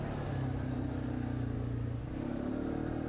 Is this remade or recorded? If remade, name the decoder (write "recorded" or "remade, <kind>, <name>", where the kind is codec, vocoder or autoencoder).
recorded